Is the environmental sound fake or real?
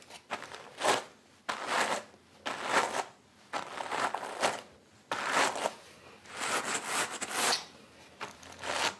real